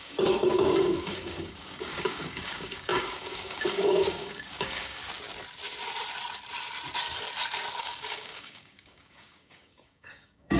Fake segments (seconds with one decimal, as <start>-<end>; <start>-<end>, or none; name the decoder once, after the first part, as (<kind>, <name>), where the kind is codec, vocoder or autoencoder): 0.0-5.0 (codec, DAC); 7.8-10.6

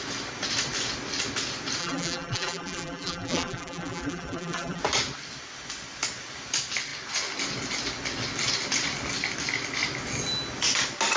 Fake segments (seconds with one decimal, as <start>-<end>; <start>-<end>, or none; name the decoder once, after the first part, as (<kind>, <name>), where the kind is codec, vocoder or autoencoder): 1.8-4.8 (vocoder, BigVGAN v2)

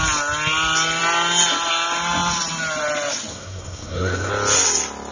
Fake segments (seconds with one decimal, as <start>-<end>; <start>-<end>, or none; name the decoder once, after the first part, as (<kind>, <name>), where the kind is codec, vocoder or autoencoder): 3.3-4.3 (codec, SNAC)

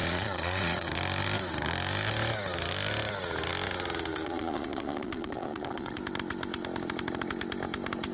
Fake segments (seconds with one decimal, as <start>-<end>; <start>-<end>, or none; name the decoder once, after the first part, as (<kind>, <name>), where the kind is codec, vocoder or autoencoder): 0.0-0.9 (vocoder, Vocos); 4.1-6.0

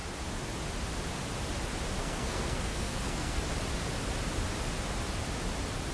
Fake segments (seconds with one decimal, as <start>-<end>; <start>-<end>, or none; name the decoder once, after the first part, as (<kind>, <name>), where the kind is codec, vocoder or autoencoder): 2.0-3.4 (codec, SNAC)

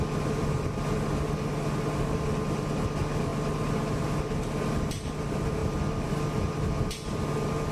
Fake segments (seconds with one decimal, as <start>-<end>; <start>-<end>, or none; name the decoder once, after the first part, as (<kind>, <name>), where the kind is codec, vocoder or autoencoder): none